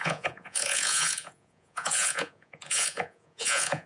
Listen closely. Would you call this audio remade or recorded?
remade